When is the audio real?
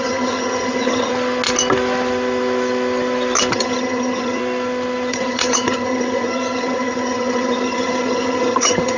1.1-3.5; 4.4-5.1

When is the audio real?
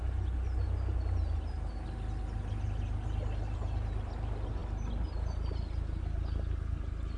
0.0-7.2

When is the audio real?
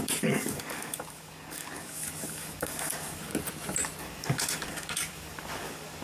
3.3-4.0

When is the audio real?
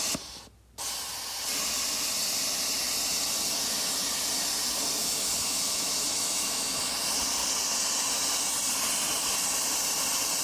0.0-5.0; 6.9-10.4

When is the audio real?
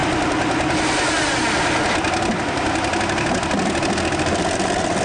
0.0-5.0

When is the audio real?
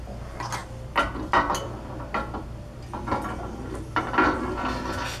0.0-5.2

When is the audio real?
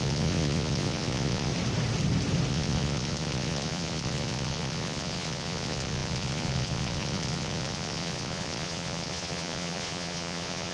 1.5-2.5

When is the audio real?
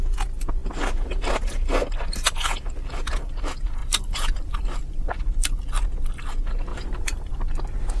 0.0-3.8; 5.1-6.7; 7.3-8.0